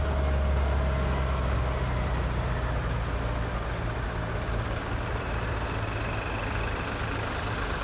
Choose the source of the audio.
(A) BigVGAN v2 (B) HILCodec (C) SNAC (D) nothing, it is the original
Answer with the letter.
D